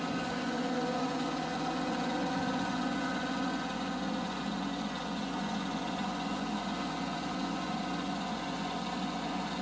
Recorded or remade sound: remade